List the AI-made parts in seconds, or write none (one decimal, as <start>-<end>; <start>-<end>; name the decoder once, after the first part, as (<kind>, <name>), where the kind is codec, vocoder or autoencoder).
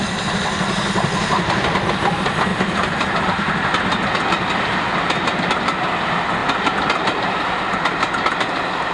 2.5-3.2 (vocoder, BigVGAN v2); 6.4-8.4